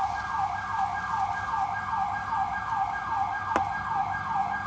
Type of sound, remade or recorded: recorded